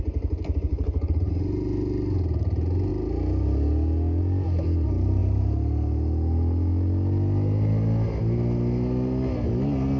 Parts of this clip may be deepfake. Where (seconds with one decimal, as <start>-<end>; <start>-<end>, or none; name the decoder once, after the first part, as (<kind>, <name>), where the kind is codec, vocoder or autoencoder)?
0.7-1.3 (codec, HILCodec)